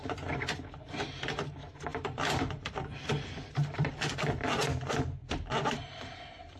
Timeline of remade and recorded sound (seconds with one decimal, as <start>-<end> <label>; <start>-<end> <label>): 0.0-1.9 recorded; 1.9-4.1 remade; 4.1-6.6 recorded